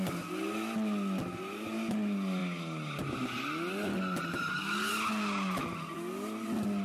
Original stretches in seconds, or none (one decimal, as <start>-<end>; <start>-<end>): 0.0-6.8